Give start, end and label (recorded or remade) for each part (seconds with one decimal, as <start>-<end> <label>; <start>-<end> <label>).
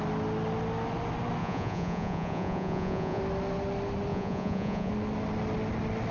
0.0-1.4 recorded; 1.4-3.2 remade; 3.2-4.1 recorded; 4.1-4.9 remade; 4.9-6.1 recorded